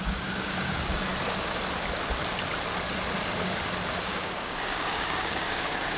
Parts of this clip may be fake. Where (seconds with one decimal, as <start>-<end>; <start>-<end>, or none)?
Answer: 0.0-1.1; 4.0-6.0